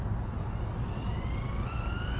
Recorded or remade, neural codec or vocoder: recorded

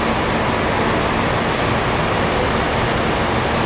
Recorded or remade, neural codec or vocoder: recorded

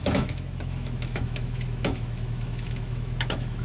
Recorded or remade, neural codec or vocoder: remade, autoencoder, DAC-VAE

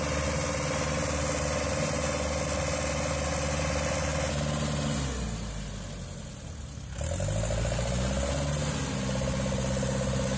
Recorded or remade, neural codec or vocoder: recorded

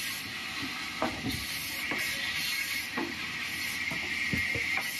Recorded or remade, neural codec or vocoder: recorded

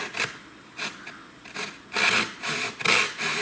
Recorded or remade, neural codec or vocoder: recorded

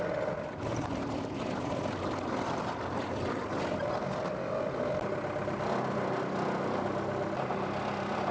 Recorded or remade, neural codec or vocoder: recorded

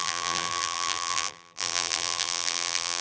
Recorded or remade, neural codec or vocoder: remade, vocoder, BigVGAN v2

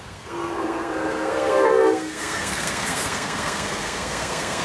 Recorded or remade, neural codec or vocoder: remade, codec, SNAC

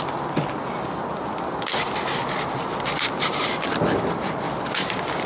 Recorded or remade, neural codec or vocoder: recorded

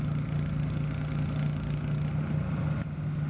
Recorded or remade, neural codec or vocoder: recorded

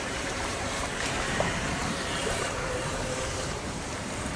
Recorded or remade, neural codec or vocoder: remade, vocoder, BigVGAN v2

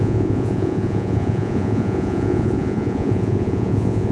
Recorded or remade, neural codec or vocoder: remade, vocoder, Vocos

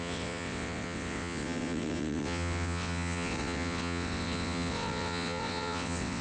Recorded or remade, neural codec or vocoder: remade, vocoder, WaveNeXt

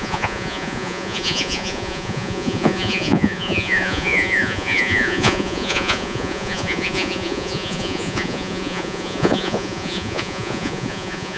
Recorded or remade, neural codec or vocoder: remade, vocoder, Vocos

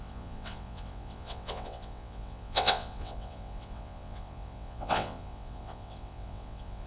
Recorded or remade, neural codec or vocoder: remade, vocoder, WaveNeXt